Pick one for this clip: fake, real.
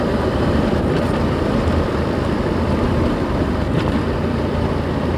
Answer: fake